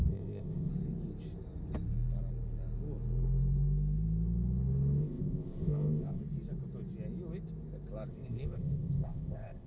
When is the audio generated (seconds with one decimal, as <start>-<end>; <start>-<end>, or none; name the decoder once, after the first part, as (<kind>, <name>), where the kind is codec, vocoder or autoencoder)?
0.0-0.7 (codec, ZipCodec); 5.0-6.2; 8.1-9.7